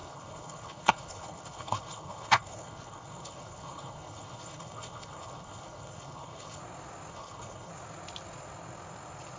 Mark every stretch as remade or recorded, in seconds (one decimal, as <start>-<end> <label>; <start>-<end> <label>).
0.0-6.6 remade; 6.6-7.1 recorded; 7.1-7.7 remade; 7.7-9.4 recorded